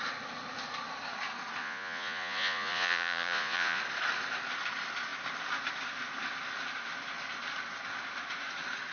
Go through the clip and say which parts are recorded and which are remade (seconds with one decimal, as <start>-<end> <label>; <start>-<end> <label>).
0.0-1.6 recorded; 1.6-3.8 remade; 3.8-8.9 recorded